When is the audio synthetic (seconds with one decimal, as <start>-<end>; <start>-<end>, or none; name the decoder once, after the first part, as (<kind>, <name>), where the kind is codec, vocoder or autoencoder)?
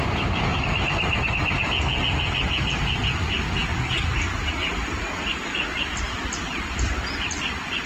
none